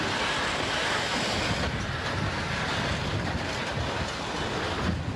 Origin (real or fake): real